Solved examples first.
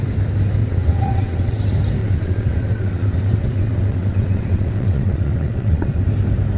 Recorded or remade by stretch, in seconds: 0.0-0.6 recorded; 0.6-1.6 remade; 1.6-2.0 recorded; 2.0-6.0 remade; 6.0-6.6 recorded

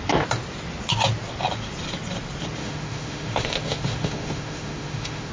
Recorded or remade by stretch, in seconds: 0.0-2.6 recorded; 2.6-5.3 remade

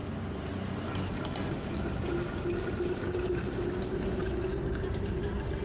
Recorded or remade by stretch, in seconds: 0.0-5.6 recorded

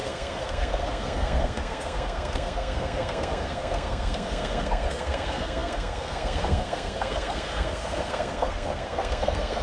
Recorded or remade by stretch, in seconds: 0.0-9.6 remade